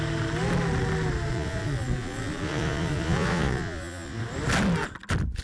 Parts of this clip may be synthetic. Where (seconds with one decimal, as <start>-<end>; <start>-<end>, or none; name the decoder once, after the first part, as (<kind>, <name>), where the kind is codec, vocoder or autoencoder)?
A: 1.3-4.2 (vocoder, Vocos)